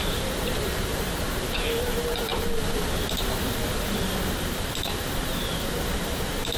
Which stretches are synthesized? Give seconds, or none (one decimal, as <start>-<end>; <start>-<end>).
0.0-2.3; 4.3-6.6